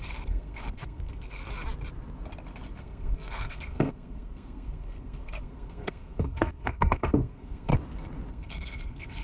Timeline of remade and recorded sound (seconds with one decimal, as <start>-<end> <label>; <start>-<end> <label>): 0.0-1.4 remade; 1.4-2.8 recorded; 2.8-7.7 remade; 7.7-8.3 recorded; 8.3-9.2 remade